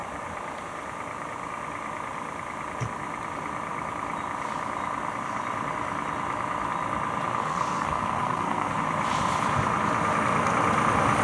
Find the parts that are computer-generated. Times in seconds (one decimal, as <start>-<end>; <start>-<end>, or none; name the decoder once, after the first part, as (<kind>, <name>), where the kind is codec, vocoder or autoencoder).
7.4-8.8 (codec, SNAC)